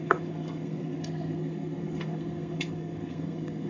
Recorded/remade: remade